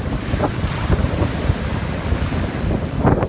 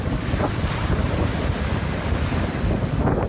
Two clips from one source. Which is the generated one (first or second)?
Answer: first